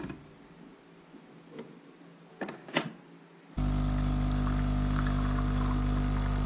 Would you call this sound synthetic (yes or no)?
no